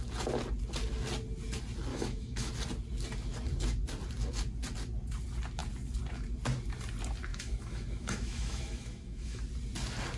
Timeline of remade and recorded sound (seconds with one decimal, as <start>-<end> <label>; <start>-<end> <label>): 0.0-1.9 recorded; 1.9-2.5 remade; 2.5-7.3 recorded; 7.3-9.4 remade; 9.4-10.2 recorded